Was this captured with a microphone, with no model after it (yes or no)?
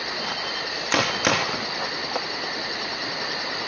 yes